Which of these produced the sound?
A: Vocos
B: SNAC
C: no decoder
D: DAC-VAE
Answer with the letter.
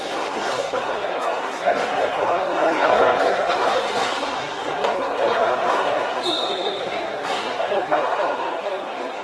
B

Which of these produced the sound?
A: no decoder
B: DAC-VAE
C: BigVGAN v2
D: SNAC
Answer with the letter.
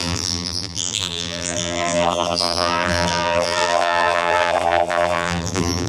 C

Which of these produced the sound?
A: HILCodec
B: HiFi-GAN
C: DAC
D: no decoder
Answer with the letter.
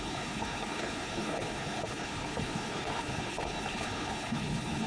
A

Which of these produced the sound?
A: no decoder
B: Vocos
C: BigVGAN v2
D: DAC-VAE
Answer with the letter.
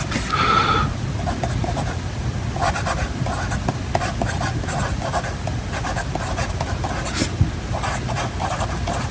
A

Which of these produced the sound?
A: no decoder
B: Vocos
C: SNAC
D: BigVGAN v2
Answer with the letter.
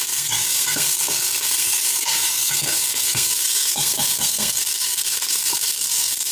C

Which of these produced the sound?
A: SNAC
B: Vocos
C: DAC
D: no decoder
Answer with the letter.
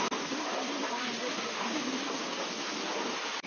D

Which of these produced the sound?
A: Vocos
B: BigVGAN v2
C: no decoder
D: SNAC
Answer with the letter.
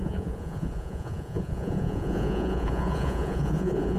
A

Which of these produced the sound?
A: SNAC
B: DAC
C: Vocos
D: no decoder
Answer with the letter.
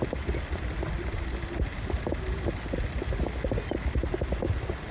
D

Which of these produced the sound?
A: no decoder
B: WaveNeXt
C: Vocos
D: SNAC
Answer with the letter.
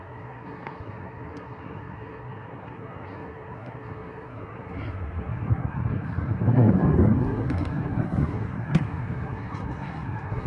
D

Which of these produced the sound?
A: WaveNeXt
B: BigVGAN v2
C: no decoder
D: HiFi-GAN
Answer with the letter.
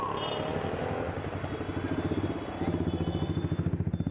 C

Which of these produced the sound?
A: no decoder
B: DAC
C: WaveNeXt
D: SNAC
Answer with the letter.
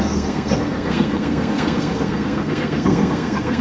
D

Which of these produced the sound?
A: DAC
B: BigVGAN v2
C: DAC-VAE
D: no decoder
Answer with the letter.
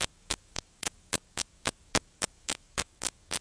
A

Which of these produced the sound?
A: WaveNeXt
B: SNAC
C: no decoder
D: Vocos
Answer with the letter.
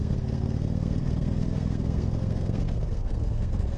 B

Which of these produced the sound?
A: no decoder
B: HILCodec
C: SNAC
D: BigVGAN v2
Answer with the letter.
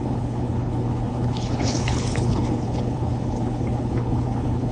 B